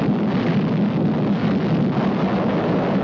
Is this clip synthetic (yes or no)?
no